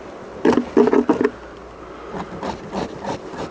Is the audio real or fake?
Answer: real